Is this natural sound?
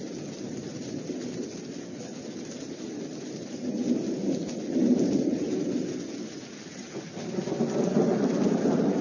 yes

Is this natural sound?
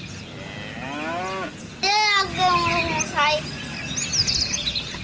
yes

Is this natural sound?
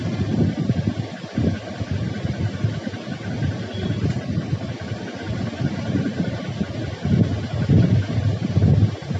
yes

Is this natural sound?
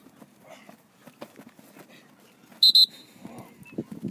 yes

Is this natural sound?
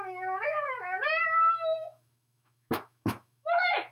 no